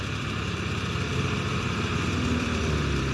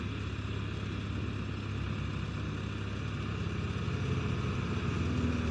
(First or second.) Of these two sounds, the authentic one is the second